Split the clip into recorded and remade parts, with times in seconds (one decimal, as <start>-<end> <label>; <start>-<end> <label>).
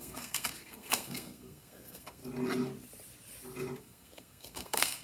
0.0-2.2 remade; 2.2-3.8 recorded; 3.8-5.0 remade